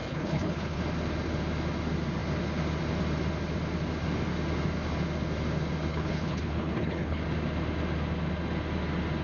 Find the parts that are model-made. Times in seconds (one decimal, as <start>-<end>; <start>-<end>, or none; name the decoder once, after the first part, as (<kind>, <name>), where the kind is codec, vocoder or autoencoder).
0.0-0.8 (codec, HILCodec); 5.9-7.2